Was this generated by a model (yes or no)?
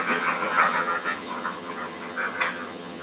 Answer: yes